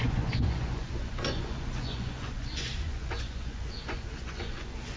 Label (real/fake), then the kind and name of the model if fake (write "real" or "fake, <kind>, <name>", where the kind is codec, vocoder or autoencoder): fake, vocoder, Vocos